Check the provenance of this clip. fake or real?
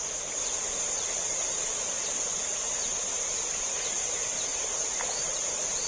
real